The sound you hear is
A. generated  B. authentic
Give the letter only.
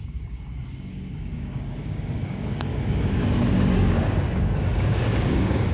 A